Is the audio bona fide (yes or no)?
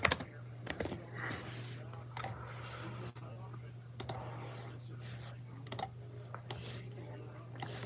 yes